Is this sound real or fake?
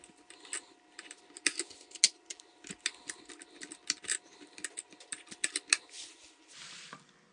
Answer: real